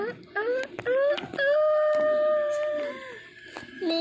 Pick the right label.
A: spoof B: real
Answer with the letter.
B